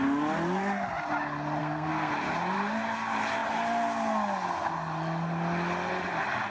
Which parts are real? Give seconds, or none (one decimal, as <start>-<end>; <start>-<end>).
0.0-1.6; 2.1-6.5